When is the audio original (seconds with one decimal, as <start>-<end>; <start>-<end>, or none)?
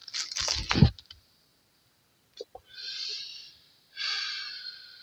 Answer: 0.0-5.0